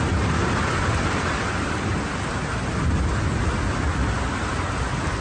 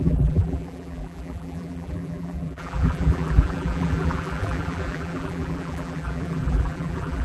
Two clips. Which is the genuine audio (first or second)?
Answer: first